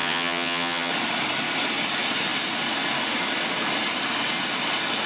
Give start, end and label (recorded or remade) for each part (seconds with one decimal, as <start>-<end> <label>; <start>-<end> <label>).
0.0-0.9 remade; 0.9-5.1 recorded